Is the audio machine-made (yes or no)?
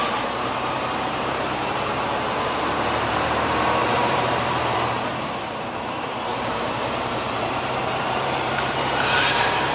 yes